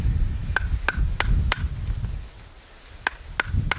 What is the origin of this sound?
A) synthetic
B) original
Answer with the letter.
B